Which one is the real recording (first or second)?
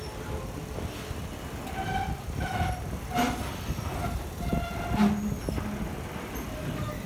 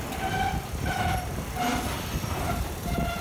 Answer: first